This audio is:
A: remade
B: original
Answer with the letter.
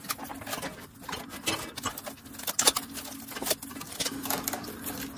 B